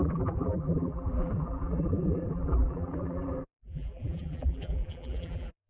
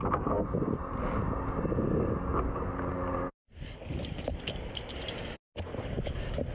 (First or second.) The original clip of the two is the second